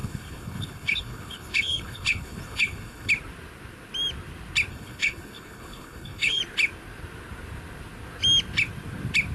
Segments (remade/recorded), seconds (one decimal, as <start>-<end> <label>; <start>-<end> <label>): 0.0-3.1 remade; 3.1-4.7 recorded; 4.7-6.4 remade; 6.4-9.3 recorded